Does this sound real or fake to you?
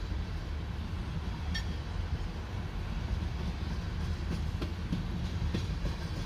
real